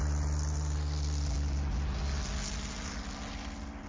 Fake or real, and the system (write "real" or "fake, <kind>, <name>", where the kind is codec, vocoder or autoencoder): real